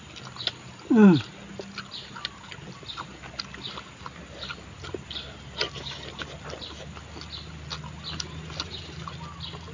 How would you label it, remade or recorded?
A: recorded